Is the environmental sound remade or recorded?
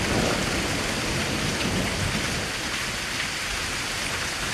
recorded